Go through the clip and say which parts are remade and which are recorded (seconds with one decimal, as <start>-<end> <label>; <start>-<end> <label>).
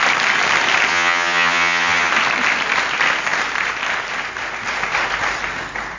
0.0-0.9 recorded; 0.9-2.1 remade; 2.1-6.0 recorded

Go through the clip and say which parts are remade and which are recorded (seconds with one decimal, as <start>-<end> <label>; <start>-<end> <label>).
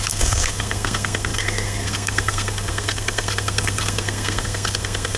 0.0-5.2 remade